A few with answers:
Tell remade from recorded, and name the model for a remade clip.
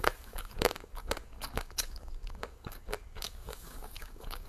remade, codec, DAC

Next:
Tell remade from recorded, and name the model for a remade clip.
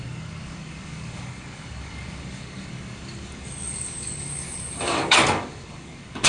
remade, codec, DAC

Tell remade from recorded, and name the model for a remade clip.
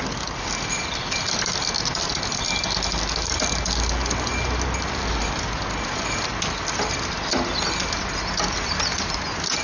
recorded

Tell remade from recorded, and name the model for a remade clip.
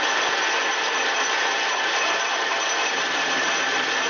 recorded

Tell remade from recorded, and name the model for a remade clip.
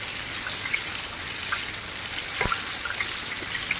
recorded